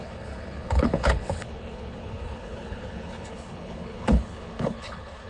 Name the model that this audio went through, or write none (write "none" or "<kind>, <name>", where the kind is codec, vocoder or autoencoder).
codec, HILCodec